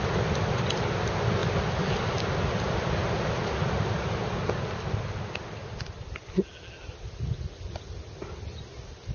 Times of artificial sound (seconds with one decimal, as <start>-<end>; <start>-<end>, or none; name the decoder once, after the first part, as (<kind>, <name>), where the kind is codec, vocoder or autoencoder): none